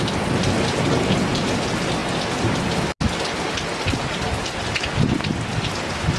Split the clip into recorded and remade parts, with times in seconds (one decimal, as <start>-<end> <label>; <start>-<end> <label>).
0.0-6.2 recorded